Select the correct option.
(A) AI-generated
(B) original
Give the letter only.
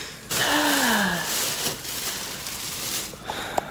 B